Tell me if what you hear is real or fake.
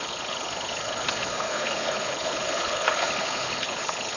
fake